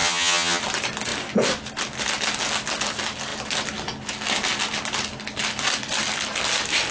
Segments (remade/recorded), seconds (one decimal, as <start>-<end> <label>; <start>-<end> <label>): 0.0-0.6 remade; 0.6-6.9 recorded